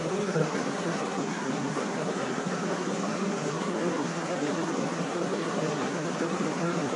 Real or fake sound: fake